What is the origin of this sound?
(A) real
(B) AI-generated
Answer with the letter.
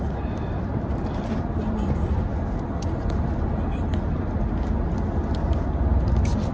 A